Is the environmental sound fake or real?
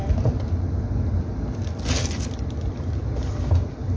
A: real